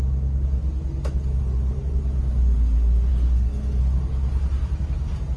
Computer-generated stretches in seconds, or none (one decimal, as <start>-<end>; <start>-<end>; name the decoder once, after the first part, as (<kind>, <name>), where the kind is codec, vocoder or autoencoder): 3.1-3.8 (codec, SNAC)